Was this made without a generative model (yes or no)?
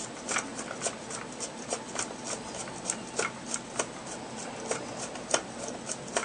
yes